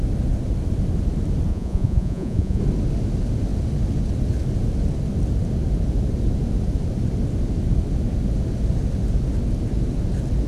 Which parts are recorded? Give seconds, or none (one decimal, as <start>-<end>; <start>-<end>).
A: 0.0-1.5; 2.6-10.5